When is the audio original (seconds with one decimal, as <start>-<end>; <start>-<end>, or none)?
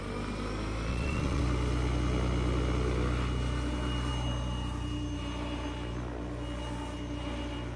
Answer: 0.0-0.9; 1.4-7.8